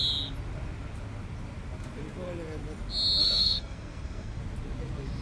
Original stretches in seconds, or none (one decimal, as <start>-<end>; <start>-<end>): 0.0-3.2; 4.4-5.2